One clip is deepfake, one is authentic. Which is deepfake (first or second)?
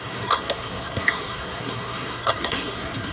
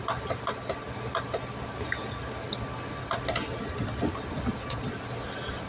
first